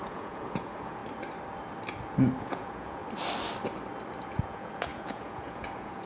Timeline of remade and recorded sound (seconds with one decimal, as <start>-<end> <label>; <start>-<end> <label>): 0.0-1.0 remade; 1.0-2.4 recorded; 2.4-3.0 remade; 3.0-4.2 recorded; 4.2-6.1 remade